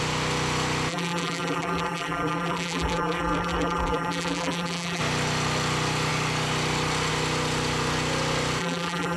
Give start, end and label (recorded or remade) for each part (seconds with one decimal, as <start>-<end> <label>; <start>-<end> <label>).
0.0-0.9 recorded; 0.9-5.0 remade; 5.0-8.6 recorded; 8.6-9.2 remade